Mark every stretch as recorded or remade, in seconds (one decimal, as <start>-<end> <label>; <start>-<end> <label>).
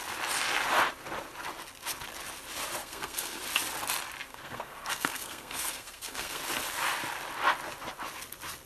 0.0-2.8 recorded; 2.8-3.4 remade; 3.4-4.3 recorded; 4.3-6.4 remade; 6.4-8.7 recorded